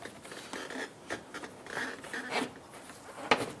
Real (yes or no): yes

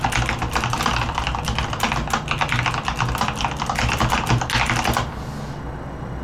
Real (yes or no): yes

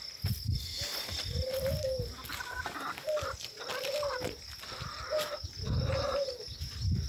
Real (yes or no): yes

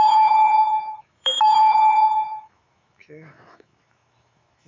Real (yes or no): no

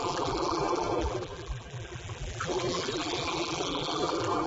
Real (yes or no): no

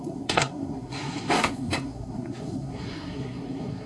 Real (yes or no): no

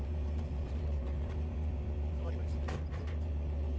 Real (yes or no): no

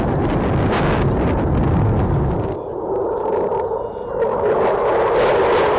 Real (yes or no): yes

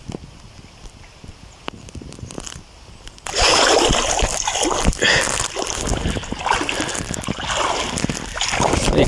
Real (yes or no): yes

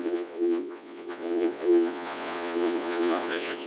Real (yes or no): no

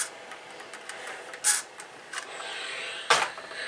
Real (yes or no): yes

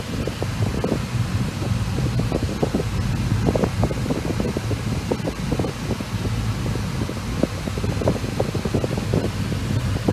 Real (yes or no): yes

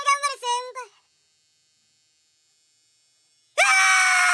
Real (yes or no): yes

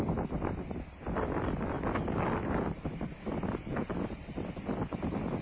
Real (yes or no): no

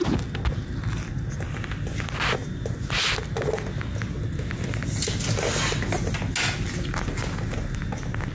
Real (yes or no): yes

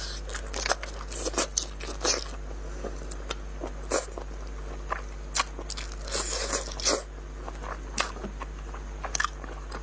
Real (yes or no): yes